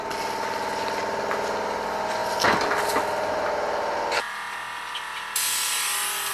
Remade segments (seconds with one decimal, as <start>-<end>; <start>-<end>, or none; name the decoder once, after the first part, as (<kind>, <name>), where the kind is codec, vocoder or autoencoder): none